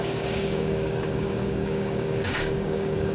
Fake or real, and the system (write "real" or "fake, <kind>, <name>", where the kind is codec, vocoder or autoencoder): fake, codec, DAC